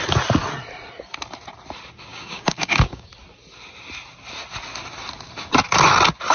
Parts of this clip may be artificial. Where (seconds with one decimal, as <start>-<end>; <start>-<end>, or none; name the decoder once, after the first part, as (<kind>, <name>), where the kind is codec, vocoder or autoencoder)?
2.1-3.1 (codec, DAC)